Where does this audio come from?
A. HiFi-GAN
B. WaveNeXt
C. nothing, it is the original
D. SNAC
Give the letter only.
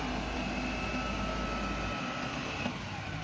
C